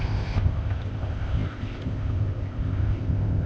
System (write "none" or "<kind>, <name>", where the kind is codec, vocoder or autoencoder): codec, ZipCodec